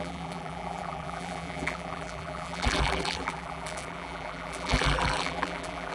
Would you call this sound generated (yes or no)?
yes